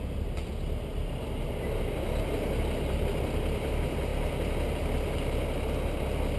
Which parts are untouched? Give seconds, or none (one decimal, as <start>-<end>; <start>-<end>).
0.0-6.4